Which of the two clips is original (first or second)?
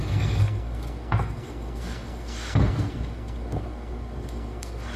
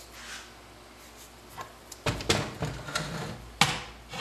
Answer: second